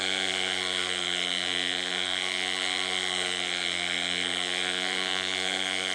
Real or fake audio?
fake